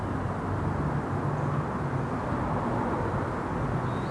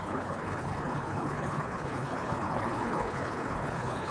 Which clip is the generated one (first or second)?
second